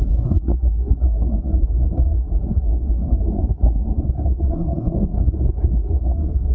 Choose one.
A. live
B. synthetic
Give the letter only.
B